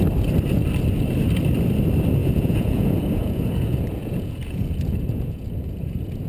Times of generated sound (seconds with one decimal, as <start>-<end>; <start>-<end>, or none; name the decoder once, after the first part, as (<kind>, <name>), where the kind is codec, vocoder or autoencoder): 2.2-6.3 (vocoder, Vocos)